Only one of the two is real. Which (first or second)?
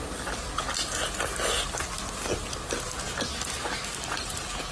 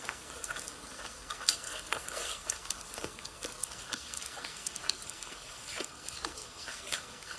first